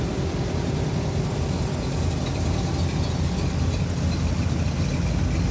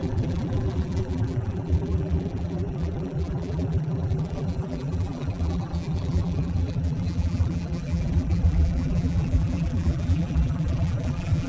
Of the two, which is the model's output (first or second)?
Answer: second